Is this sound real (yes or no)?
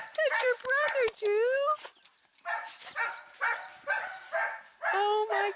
yes